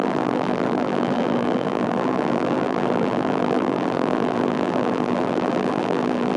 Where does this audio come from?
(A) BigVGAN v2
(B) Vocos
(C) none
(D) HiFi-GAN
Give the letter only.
A